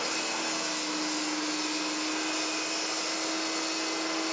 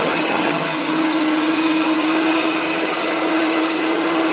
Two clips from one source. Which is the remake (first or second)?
second